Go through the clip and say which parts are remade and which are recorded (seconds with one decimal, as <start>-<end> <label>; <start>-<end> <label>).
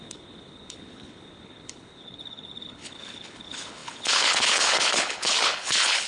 0.0-6.1 remade